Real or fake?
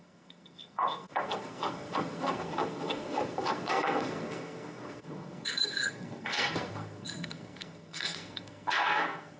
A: fake